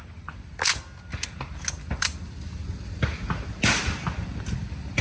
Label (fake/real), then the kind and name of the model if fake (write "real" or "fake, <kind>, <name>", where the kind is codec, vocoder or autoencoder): real